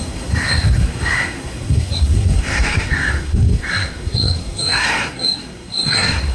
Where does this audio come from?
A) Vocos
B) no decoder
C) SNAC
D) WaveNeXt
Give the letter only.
C